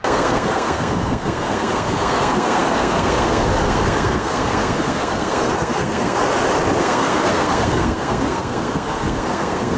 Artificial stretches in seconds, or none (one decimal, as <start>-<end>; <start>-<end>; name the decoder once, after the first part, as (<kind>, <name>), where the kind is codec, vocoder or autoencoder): 0.0-6.2 (codec, SNAC); 6.8-9.8